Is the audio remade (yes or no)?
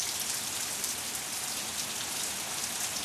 yes